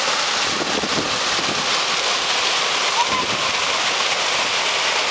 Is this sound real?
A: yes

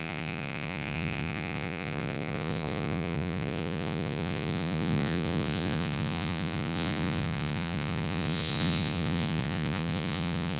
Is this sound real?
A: no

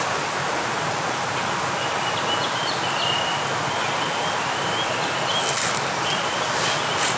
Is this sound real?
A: yes